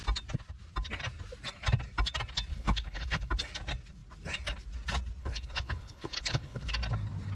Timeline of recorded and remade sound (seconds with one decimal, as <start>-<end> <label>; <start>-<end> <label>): 0.0-2.5 recorded; 2.5-3.3 remade; 3.3-5.2 recorded; 5.2-6.7 remade; 6.7-7.3 recorded

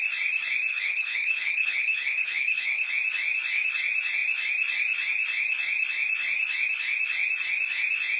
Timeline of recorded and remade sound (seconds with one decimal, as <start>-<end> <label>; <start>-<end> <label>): 0.0-0.7 recorded; 0.7-2.9 remade; 2.9-8.2 recorded